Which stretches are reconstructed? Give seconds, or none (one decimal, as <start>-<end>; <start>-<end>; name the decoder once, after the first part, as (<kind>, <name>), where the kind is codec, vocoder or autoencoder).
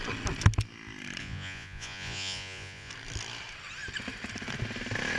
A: 1.2-2.9 (vocoder, Vocos)